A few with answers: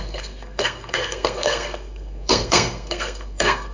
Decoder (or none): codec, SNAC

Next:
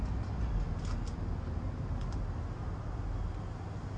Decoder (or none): none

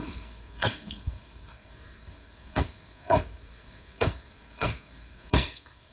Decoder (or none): codec, SNAC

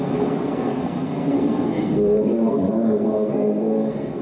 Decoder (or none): codec, SNAC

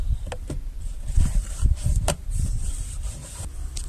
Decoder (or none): none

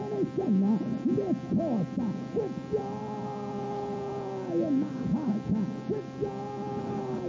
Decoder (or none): none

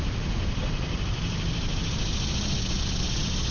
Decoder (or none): none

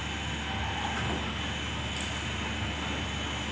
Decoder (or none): none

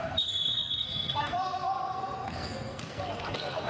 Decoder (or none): codec, SNAC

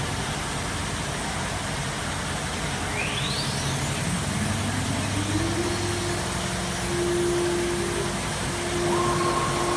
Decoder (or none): none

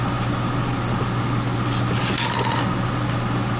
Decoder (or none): none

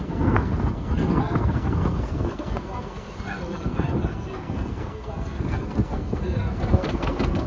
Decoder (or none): codec, SNAC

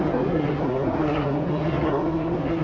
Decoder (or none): codec, SNAC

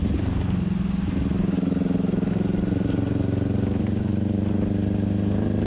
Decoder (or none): none